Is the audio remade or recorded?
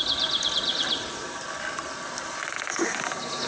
recorded